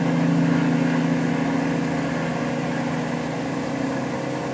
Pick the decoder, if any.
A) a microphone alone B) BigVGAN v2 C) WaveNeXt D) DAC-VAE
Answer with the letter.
A